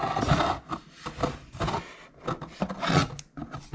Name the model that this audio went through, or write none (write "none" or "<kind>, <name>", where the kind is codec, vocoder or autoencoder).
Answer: none